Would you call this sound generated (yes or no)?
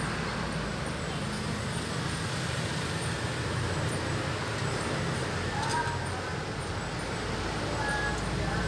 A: no